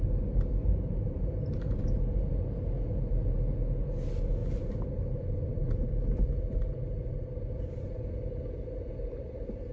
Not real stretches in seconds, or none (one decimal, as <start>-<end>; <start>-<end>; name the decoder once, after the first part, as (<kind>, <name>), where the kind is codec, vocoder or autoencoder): 0.6-1.8 (vocoder, BigVGAN v2); 4.4-4.9; 5.5-9.7